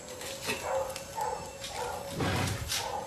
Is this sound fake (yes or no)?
no